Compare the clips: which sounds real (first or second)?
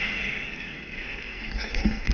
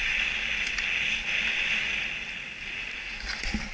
second